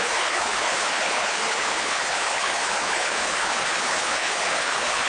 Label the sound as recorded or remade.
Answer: remade